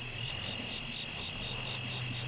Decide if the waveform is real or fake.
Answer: real